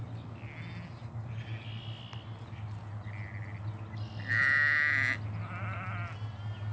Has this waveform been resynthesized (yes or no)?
no